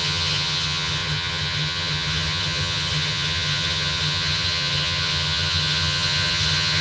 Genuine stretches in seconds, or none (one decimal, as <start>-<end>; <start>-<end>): none